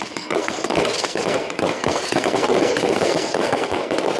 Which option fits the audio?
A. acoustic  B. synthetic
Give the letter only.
B